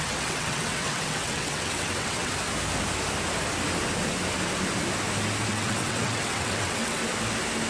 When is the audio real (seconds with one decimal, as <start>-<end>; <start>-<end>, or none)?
2.3-5.5; 7.0-7.7